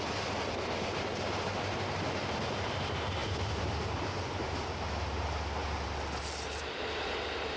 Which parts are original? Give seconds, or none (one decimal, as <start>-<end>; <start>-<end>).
0.0-3.2; 4.0-7.6

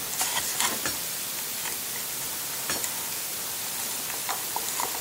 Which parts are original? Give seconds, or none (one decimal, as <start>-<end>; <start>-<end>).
0.0-5.0